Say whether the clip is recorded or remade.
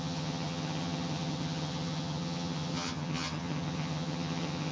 remade